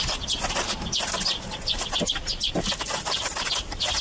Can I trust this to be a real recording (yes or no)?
yes